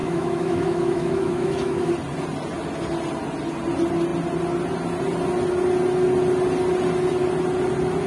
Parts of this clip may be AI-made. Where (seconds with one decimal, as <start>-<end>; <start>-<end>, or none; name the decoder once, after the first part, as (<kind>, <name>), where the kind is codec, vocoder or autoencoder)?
0.0-1.9 (autoencoder, DAC-VAE)